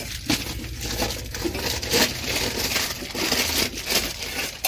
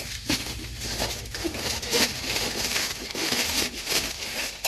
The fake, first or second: second